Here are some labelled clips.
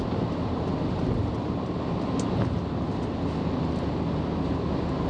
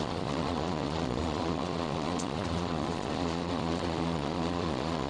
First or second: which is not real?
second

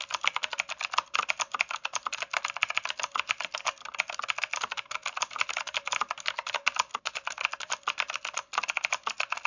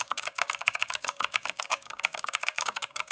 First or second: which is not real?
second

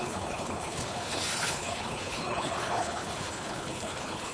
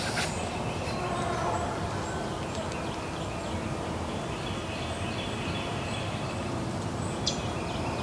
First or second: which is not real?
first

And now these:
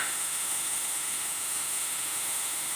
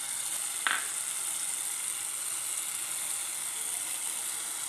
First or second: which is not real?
first